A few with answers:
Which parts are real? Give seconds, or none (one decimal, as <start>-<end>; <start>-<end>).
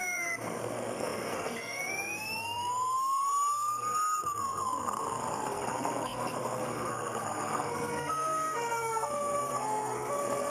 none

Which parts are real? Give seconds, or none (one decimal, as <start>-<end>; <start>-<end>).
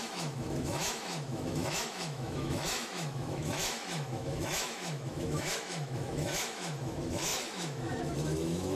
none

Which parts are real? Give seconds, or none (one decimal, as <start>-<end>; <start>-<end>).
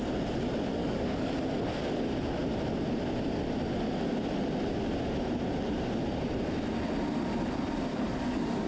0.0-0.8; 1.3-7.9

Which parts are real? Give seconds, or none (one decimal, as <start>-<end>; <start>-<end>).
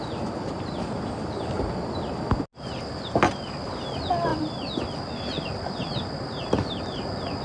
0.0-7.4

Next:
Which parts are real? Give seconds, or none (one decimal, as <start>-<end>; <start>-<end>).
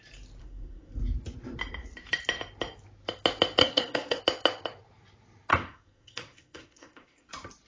0.0-0.4; 1.0-3.6; 4.2-5.5; 7.3-7.7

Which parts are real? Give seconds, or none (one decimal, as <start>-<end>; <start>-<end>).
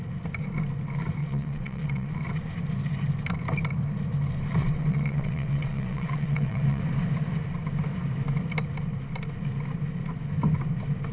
0.0-1.2; 2.1-4.6; 6.8-11.1